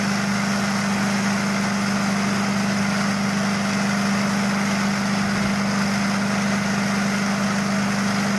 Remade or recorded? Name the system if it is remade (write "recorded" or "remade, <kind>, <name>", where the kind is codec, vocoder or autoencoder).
recorded